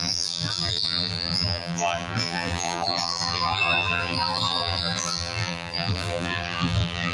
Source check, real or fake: fake